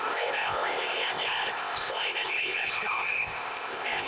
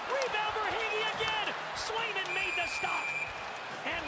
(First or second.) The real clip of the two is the second